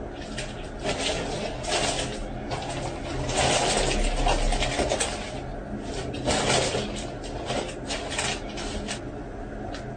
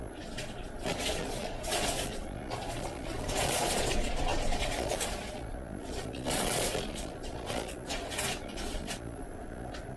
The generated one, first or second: second